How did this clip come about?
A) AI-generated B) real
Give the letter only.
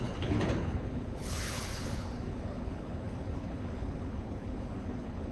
A